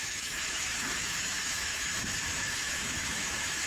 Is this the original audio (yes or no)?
no